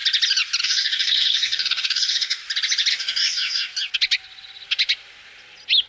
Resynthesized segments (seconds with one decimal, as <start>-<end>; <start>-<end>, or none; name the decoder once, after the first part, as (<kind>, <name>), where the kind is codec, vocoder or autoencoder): 0.6-2.4 (codec, DAC); 2.9-3.7